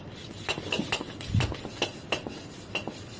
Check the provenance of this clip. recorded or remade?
recorded